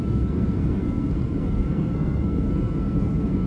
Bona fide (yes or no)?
no